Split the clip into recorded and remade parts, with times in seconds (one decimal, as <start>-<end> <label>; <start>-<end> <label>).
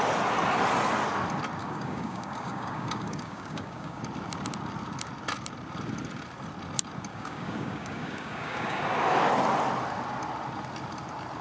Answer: 0.0-1.6 recorded; 1.6-4.0 remade; 4.0-7.1 recorded; 7.1-8.8 remade; 8.8-11.4 recorded